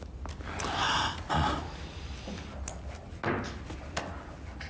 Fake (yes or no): no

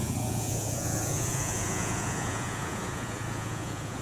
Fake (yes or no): yes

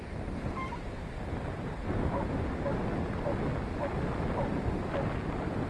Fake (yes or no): no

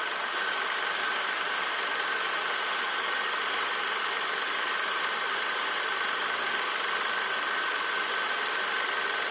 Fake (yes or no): no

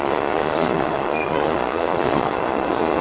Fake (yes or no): yes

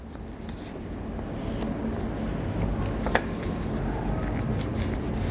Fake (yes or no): no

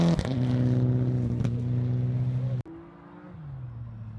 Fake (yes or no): no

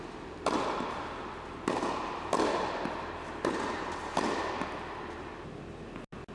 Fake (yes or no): no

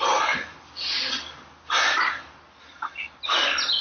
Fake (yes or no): no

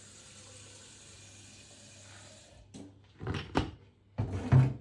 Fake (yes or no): no